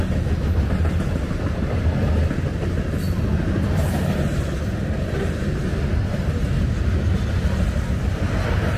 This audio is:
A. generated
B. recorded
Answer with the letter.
B